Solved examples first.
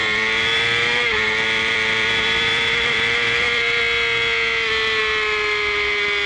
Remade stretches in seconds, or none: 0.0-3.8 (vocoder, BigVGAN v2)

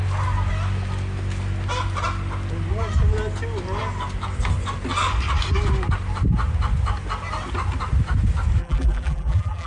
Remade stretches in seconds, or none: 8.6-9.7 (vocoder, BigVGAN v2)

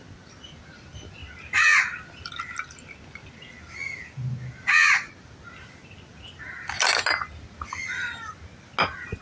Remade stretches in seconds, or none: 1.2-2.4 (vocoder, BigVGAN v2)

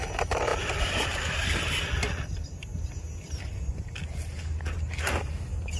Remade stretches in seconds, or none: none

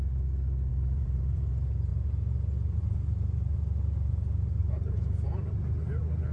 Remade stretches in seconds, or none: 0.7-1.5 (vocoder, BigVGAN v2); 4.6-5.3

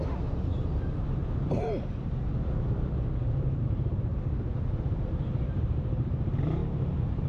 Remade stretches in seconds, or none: 0.0-1.2 (vocoder, BigVGAN v2); 3.4-4.1; 5.4-7.3